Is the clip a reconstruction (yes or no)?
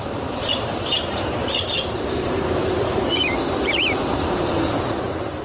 yes